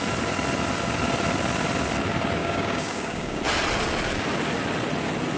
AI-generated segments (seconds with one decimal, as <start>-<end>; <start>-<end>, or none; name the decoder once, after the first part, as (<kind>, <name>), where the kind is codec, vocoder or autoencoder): 2.4-3.4 (codec, DAC)